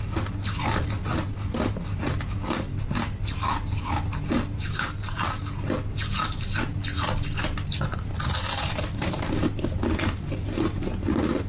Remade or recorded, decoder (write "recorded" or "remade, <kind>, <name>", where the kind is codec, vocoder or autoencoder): recorded